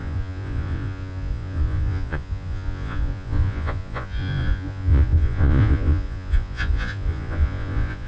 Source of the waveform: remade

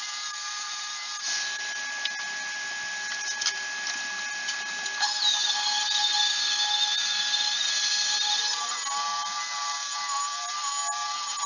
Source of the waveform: recorded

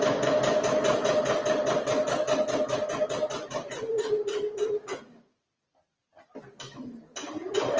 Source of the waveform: recorded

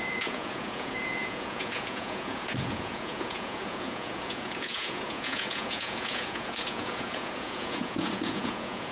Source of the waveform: remade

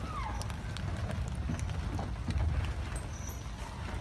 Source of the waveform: recorded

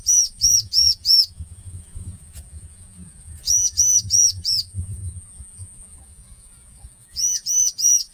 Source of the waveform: remade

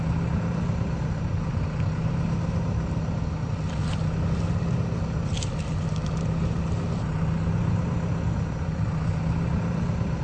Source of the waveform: recorded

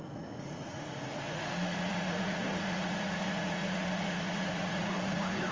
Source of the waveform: remade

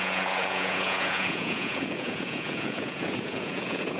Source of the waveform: remade